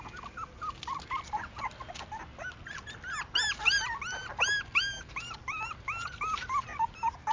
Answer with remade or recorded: recorded